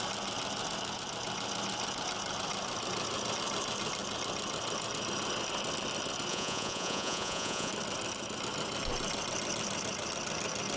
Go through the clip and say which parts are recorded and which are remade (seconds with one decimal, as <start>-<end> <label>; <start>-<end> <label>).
0.0-6.3 recorded; 6.3-7.7 remade; 7.7-10.8 recorded